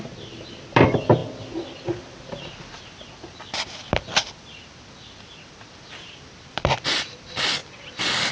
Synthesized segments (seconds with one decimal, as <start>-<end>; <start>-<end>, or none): 0.0-1.2; 5.2-8.3